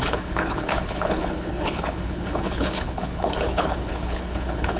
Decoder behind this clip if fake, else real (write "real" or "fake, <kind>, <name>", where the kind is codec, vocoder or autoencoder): fake, codec, HILCodec